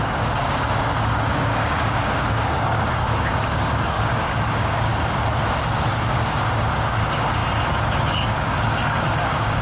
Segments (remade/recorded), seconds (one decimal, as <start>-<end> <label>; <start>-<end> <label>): 0.0-4.9 remade; 4.9-5.9 recorded; 5.9-7.4 remade; 7.4-8.1 recorded; 8.1-9.6 remade